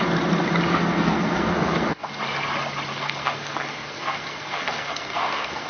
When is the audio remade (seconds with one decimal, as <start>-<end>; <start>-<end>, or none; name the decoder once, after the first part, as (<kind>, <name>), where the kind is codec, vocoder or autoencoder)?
0.7-2.1 (codec, SNAC); 2.9-5.7

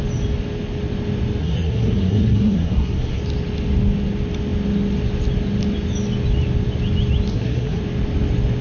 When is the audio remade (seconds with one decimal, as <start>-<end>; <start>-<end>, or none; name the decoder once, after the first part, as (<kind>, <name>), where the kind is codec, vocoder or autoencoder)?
1.4-3.2 (codec, SNAC); 7.3-7.8

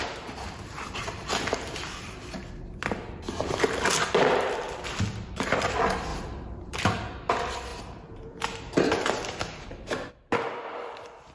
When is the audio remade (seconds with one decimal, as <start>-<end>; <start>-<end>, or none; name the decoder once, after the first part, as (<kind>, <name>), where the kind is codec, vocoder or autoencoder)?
6.1-6.8 (vocoder, BigVGAN v2); 7.7-9.1

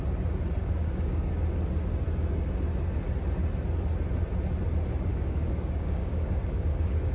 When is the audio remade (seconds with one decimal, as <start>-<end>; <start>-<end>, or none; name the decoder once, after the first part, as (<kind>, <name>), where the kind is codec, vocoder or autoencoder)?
0.6-1.3 (codec, DAC); 5.1-7.1

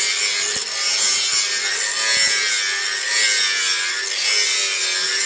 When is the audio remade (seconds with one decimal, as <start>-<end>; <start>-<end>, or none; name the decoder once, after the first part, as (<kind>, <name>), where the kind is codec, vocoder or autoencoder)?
none